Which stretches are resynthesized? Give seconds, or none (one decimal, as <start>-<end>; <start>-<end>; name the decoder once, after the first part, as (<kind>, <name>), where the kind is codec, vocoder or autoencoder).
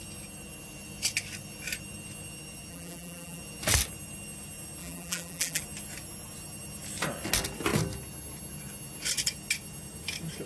2.7-3.4 (vocoder, BigVGAN v2); 4.8-5.6